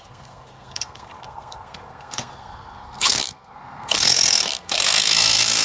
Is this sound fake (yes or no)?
yes